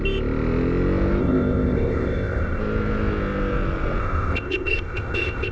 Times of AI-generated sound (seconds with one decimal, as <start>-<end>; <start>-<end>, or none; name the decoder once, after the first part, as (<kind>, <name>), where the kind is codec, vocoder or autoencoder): 1.2-2.6 (codec, ZipCodec); 4.0-5.5